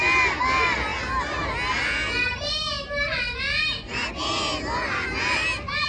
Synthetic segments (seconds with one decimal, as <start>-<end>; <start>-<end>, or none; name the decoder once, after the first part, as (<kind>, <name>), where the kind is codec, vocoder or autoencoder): none